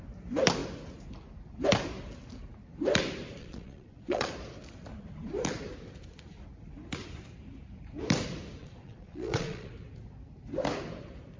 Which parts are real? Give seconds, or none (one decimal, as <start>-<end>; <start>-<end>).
0.0-3.4; 4.3-8.6; 9.7-11.4